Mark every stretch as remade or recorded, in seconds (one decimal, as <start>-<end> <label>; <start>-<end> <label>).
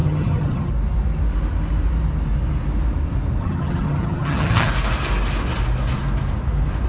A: 0.0-0.7 remade; 0.7-3.4 recorded; 3.4-4.7 remade; 4.7-6.9 recorded